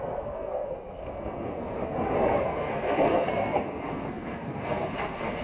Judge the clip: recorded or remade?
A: remade